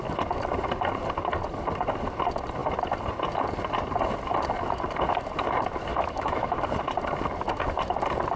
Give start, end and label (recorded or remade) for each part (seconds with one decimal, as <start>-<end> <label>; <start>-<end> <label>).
0.0-5.9 recorded; 5.9-6.6 remade; 6.6-8.4 recorded